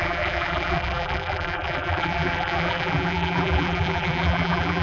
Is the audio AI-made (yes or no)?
yes